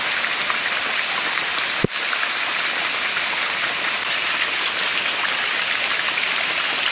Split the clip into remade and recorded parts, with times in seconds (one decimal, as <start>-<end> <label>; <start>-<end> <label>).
0.0-6.9 recorded